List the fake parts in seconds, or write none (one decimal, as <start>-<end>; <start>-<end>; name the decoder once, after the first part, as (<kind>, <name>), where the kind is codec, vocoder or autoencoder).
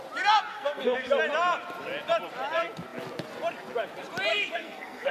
0.5-1.1 (codec, SNAC); 4.3-5.1